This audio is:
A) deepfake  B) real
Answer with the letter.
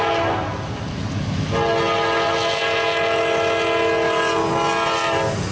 B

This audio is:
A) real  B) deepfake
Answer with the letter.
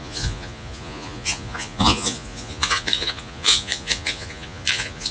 B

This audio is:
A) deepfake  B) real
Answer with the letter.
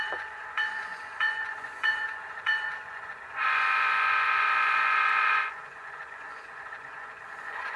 A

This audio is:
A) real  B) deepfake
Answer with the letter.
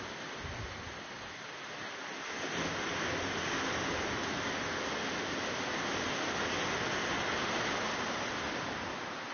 A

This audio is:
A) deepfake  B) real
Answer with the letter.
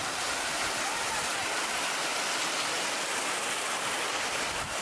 B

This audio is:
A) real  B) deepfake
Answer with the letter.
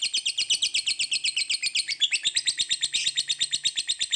A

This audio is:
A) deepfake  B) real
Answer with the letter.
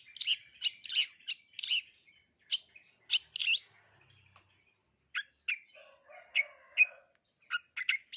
B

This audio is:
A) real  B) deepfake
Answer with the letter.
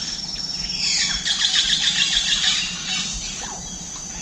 B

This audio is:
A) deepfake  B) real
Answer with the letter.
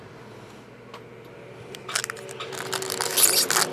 B